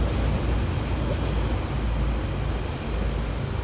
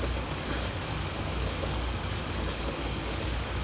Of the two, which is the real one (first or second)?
first